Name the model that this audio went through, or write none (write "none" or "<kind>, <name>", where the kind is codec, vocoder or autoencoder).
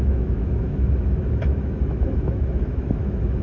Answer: autoencoder, DAC-VAE